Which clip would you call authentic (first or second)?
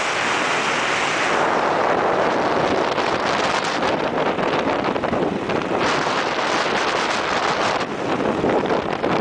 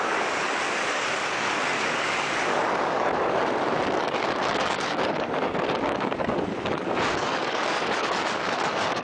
first